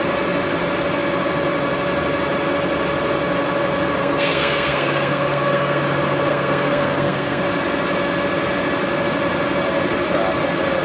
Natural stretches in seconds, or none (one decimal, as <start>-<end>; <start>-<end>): 0.0-4.0; 5.8-6.3; 7.4-10.8